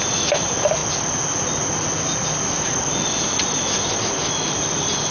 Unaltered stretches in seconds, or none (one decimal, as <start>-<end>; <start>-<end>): 0.8-3.9